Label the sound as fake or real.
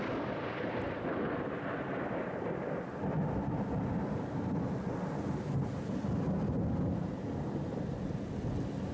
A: real